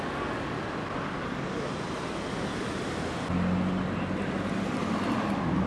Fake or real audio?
real